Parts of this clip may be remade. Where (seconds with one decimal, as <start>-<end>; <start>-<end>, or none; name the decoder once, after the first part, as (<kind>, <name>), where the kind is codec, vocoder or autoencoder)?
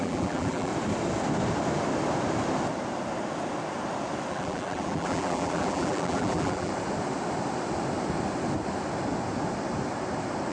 0.0-0.7 (vocoder, BigVGAN v2); 4.3-6.7